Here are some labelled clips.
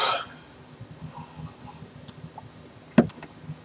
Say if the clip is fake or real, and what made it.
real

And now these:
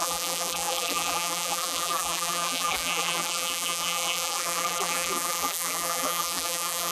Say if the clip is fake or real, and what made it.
fake, vocoder, BigVGAN v2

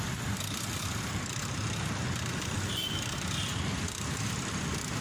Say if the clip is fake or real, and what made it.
fake, vocoder, BigVGAN v2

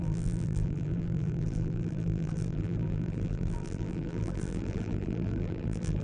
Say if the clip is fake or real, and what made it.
fake, vocoder, BigVGAN v2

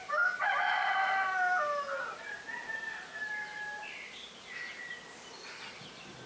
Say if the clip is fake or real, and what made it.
real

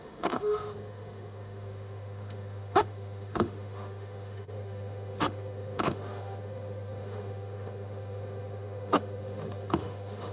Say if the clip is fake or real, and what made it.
fake, autoencoder, DAC-VAE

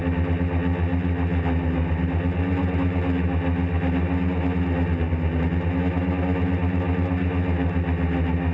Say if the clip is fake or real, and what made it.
real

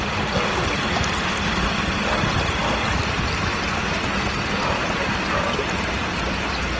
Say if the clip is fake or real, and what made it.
real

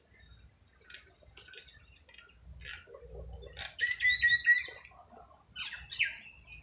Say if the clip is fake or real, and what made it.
real